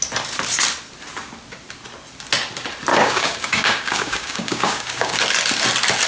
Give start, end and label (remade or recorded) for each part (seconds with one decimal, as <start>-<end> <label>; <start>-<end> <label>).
0.0-2.9 recorded; 2.9-5.2 remade; 5.2-6.1 recorded